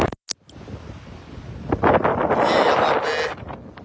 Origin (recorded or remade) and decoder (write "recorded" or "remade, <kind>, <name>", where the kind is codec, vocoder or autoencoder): recorded